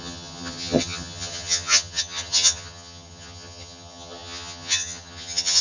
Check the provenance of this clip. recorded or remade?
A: remade